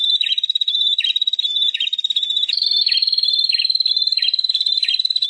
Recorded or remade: recorded